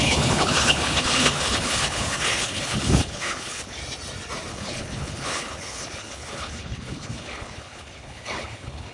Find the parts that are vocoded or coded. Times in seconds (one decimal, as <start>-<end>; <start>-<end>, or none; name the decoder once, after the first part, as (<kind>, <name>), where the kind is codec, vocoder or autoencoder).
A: 0.0-3.8 (codec, HILCodec); 4.5-8.9